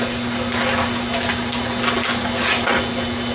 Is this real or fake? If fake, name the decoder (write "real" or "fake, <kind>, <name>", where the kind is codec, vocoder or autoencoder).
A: real